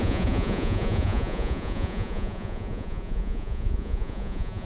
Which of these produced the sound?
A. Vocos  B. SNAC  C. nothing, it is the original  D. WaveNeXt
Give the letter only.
A